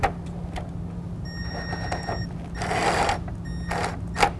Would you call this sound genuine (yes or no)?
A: yes